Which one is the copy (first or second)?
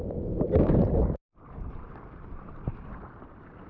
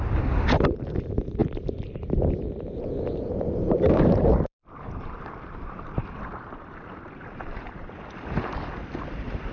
second